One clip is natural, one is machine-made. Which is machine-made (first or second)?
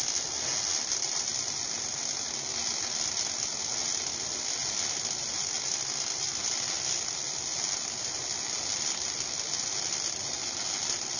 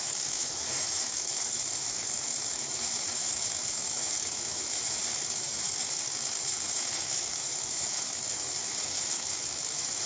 second